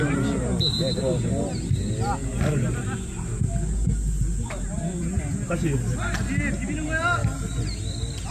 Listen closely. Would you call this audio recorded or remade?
recorded